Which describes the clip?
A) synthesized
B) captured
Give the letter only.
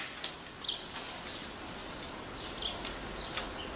B